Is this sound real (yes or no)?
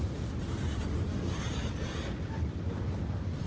yes